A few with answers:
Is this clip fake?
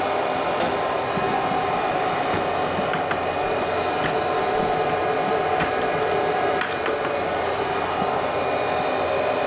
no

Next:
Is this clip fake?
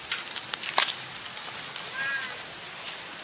no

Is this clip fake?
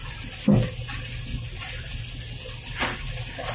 no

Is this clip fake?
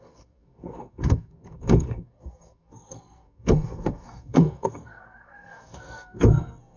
yes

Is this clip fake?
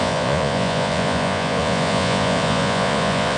yes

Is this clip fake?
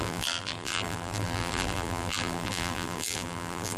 yes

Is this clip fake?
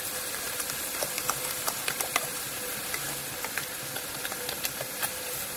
no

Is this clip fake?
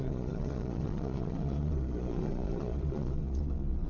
yes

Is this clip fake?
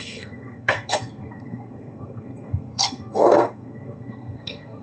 yes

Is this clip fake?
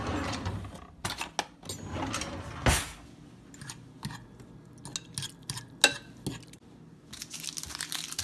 no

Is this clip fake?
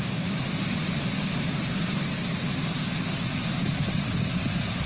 no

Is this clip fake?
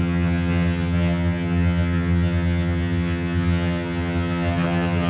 yes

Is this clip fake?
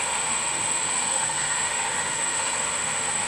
yes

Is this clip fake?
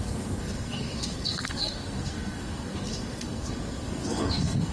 yes